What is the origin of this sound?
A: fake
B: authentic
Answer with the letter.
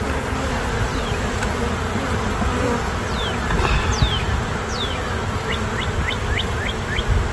B